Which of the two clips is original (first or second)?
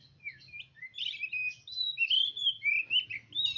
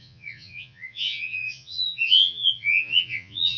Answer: first